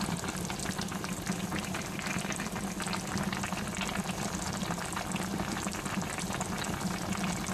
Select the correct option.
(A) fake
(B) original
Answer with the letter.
B